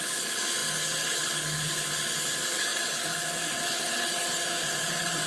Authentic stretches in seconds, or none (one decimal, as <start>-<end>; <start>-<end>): none